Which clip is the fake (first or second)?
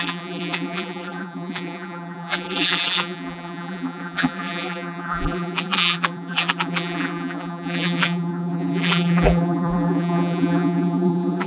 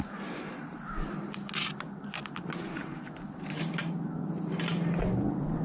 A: first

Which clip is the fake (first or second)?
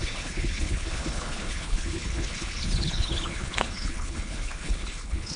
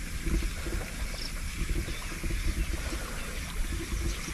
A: first